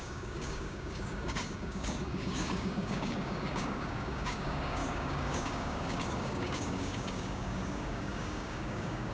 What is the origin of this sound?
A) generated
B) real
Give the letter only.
A